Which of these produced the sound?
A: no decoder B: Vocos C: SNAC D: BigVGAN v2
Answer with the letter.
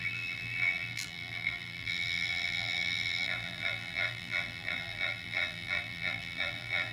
D